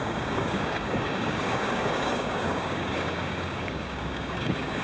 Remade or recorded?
remade